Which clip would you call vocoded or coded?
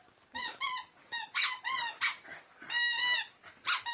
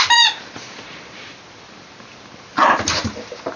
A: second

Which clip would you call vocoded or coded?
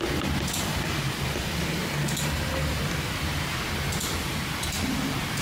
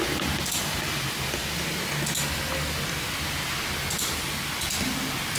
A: first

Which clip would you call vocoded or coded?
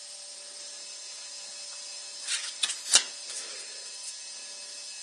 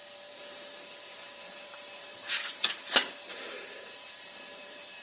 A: second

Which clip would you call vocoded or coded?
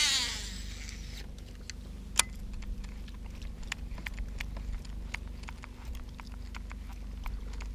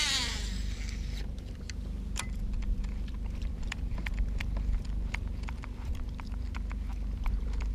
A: second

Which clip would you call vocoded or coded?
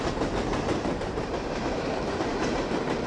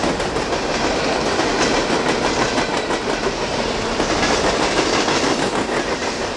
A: first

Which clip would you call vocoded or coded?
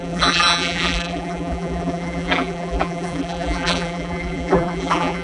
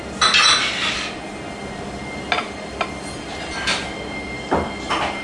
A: first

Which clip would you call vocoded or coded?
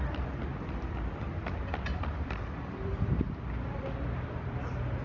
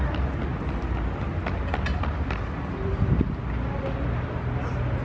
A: first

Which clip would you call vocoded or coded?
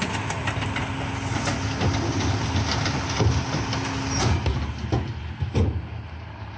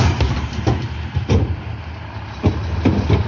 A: second